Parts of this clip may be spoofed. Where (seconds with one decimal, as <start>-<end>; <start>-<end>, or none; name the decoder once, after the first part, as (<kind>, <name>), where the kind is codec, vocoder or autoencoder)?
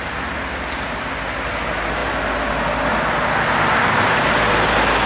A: none